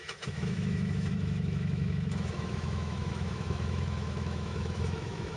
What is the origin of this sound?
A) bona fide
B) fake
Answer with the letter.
B